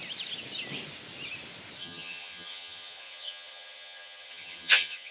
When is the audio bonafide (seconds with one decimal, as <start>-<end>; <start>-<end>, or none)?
0.0-1.8